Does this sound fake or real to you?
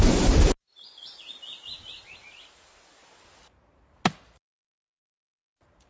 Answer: real